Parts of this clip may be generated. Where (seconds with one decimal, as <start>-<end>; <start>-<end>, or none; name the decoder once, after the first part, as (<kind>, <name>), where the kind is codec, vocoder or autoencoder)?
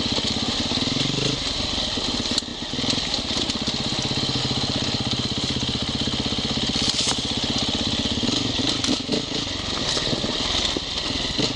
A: none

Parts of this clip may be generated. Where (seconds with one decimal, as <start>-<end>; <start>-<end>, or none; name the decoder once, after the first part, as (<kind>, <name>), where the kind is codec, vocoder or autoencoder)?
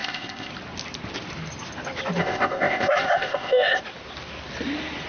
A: 0.0-0.5 (codec, ZipCodec); 2.2-3.8